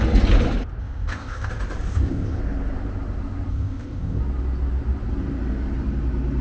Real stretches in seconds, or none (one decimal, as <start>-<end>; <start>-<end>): 0.0-0.8; 1.5-1.9; 2.4-3.5; 4.2-6.4